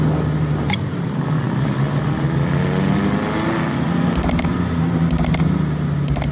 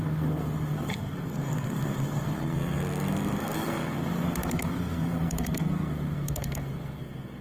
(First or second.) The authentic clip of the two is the first